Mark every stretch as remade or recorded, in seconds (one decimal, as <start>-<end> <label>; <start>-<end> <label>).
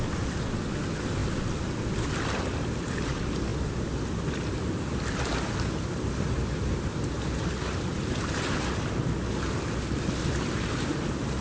0.0-11.4 recorded